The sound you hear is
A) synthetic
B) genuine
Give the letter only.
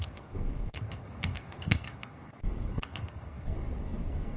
A